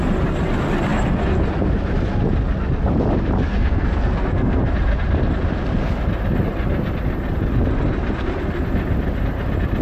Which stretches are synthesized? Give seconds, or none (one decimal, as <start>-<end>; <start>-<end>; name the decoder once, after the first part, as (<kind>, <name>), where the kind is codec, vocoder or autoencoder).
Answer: 3.5-4.6 (codec, SNAC)